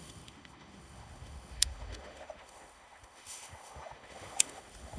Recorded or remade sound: remade